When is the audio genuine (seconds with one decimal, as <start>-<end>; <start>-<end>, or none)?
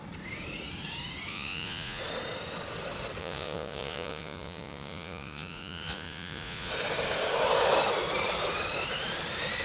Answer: 0.0-1.3; 2.0-3.2; 6.7-9.6